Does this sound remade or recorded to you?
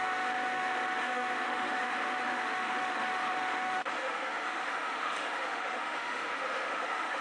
remade